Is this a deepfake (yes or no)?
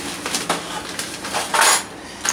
no